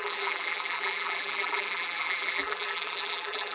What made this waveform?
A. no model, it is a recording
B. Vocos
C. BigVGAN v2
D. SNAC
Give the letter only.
C